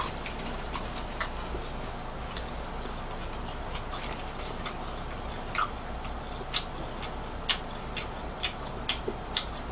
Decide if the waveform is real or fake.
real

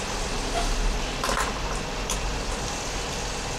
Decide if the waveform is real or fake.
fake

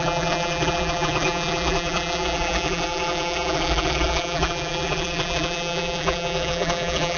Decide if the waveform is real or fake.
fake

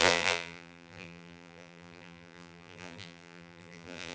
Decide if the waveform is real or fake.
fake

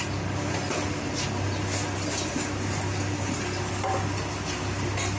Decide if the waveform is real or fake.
real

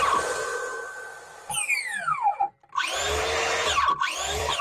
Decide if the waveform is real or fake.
fake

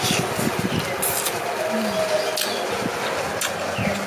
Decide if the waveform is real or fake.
real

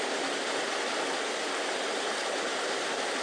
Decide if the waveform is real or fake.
real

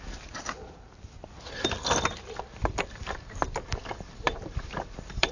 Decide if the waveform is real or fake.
fake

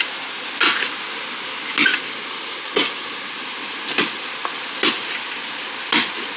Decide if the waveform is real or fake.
real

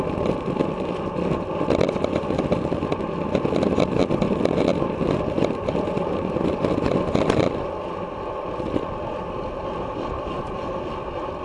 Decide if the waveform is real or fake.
real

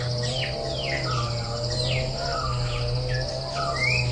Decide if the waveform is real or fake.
real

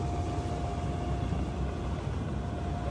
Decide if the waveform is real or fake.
real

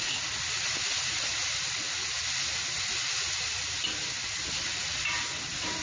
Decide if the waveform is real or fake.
fake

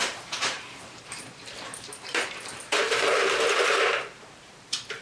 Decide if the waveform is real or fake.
fake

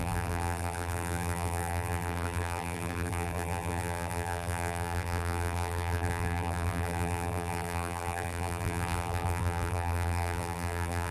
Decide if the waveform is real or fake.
fake